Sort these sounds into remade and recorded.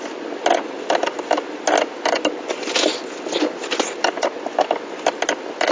recorded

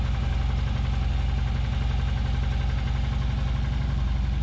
recorded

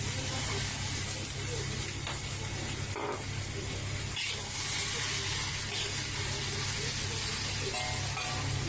recorded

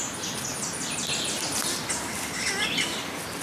recorded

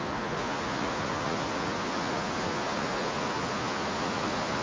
remade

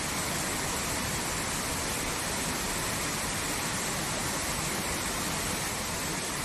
recorded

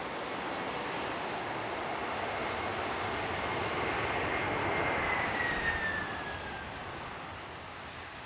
recorded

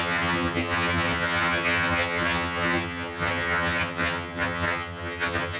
remade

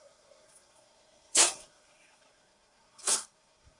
remade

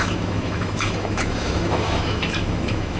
remade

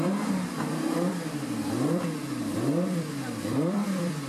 remade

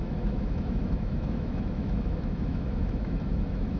remade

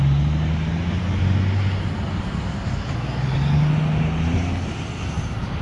recorded